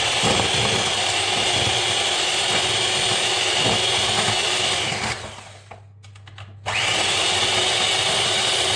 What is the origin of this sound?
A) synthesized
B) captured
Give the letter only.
B